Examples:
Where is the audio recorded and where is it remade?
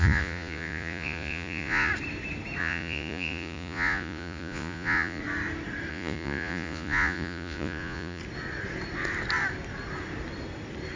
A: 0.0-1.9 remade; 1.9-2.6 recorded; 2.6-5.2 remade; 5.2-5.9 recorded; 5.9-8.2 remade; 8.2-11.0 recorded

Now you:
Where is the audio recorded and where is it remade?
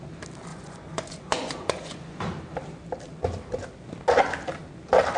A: 0.0-0.5 recorded; 0.5-2.2 remade; 2.2-5.2 recorded